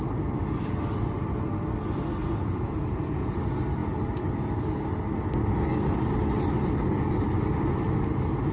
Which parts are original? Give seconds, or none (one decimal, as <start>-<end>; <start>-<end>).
0.0-2.2; 3.4-8.5